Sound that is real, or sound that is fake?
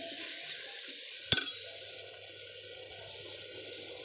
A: real